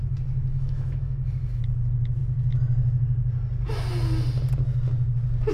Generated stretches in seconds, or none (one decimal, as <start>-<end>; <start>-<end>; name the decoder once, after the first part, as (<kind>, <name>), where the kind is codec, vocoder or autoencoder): 0.5-1.6 (autoencoder, DAC-VAE)